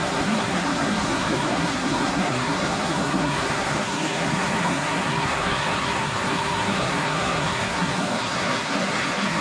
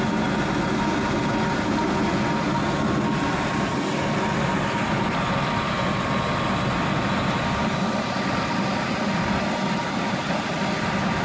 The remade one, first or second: first